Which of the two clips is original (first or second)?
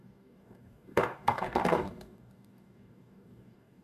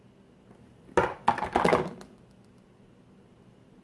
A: second